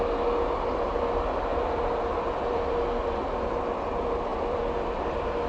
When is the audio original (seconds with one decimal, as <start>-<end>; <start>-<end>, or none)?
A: 0.0-1.5; 3.5-4.3; 5.1-5.5

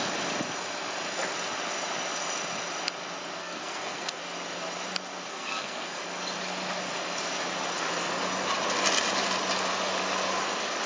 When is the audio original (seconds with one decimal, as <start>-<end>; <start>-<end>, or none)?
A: 0.0-3.4; 4.2-5.3; 6.0-10.9

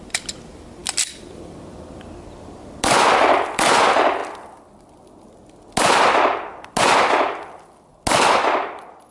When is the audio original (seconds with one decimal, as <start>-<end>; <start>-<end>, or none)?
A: 4.2-6.8; 7.9-9.1

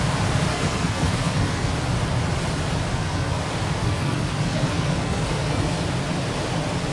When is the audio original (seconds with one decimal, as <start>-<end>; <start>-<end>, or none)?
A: 0.0-0.5; 1.7-2.9; 3.4-3.8; 5.8-6.9

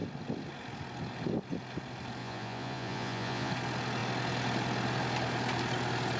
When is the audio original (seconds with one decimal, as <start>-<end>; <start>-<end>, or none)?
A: 0.0-2.2; 3.5-6.2

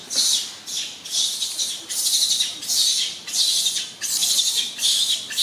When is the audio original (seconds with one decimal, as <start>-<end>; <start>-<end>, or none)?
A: none